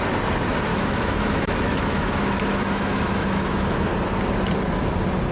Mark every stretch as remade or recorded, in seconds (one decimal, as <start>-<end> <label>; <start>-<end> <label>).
0.0-0.7 recorded; 0.7-3.9 remade; 3.9-5.3 recorded